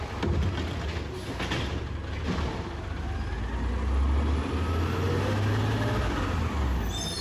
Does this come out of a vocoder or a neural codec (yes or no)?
no